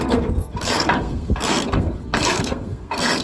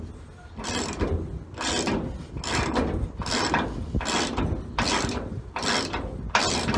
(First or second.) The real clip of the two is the second